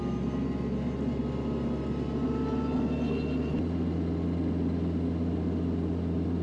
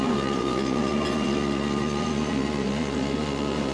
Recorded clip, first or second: first